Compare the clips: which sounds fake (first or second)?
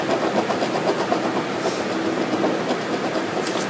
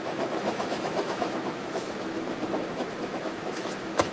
second